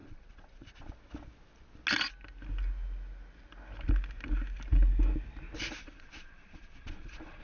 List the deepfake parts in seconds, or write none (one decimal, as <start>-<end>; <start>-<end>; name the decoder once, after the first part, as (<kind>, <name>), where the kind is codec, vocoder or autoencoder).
0.0-0.9 (vocoder, Vocos); 5.8-7.4